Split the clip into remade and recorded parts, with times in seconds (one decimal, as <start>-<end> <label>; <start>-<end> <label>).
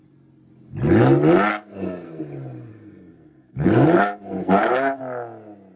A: 0.0-1.5 recorded; 1.5-2.2 remade; 2.2-2.7 recorded; 2.7-5.0 remade; 5.0-5.8 recorded